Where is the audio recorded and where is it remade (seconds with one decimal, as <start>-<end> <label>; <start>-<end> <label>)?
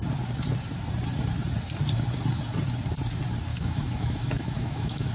0.0-3.5 recorded; 3.5-5.1 remade